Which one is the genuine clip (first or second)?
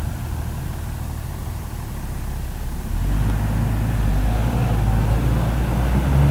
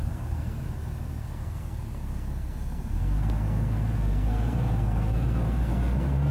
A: first